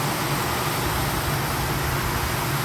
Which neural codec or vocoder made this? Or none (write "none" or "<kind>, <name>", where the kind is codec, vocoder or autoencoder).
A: none